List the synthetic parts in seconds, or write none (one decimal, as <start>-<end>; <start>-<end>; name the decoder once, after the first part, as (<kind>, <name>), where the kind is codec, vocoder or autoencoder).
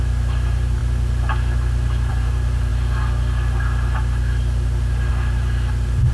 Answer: 0.0-0.8 (vocoder, BigVGAN v2); 2.1-2.7; 5.1-6.1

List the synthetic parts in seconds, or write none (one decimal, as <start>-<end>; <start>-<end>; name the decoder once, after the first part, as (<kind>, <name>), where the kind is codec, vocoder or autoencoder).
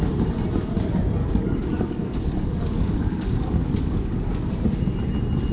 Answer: 1.2-4.5 (codec, DAC)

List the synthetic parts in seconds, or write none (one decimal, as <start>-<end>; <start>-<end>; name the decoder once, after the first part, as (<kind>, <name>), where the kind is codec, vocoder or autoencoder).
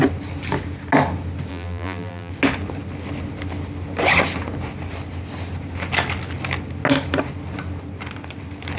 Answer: 1.5-2.3 (vocoder, BigVGAN v2)